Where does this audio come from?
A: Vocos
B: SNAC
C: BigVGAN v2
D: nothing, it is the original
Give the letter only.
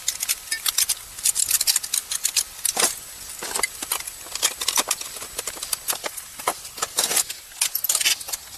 D